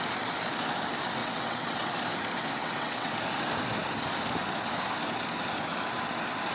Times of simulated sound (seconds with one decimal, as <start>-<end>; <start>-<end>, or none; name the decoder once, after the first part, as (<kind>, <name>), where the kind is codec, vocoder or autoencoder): 1.2-1.9 (vocoder, WaveNeXt); 2.6-3.2